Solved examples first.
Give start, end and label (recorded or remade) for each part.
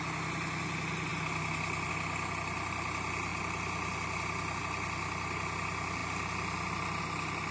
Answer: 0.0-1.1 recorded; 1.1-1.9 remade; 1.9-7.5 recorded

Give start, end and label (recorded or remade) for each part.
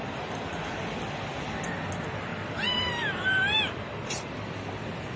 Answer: 0.0-2.3 recorded; 2.3-3.8 remade; 3.8-5.2 recorded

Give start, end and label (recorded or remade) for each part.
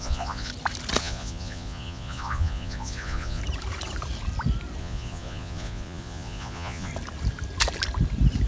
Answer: 0.0-0.5 remade; 0.5-1.0 recorded; 1.0-3.4 remade; 3.4-4.8 recorded; 4.8-6.9 remade; 6.9-8.5 recorded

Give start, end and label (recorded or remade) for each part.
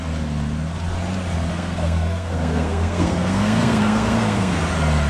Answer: 0.0-1.5 recorded; 1.5-4.6 remade; 4.6-5.1 recorded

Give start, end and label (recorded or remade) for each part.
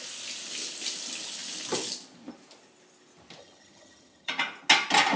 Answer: 0.0-3.4 recorded; 3.4-4.3 remade; 4.3-5.2 recorded